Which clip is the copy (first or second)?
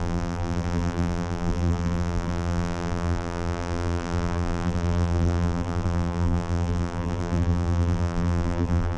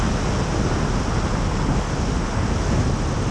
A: first